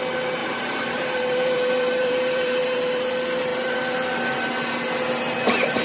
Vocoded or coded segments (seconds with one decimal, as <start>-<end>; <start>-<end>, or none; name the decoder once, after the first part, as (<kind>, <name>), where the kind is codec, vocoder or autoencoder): 0.4-3.1 (vocoder, BigVGAN v2); 3.5-4.1